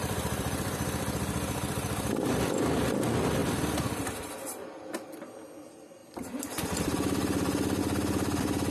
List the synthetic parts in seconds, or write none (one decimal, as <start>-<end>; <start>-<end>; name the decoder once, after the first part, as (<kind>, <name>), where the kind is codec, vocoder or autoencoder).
0.0-2.3 (vocoder, BigVGAN v2); 3.4-4.3; 6.0-7.8